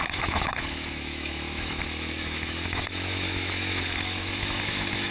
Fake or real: fake